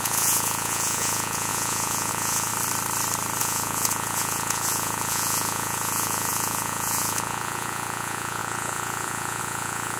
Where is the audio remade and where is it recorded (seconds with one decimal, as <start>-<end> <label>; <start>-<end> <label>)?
0.0-2.5 remade; 2.5-3.4 recorded; 3.4-10.0 remade